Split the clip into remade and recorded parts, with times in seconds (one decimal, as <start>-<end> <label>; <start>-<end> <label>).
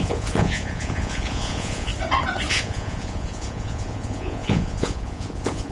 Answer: 0.0-1.9 remade; 1.9-2.5 recorded; 2.5-5.7 remade